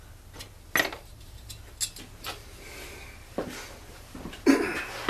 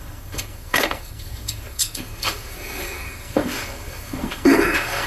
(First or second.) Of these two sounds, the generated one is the second